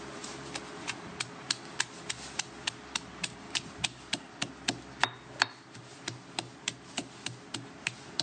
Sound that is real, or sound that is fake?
real